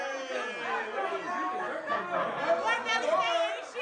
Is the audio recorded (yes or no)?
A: yes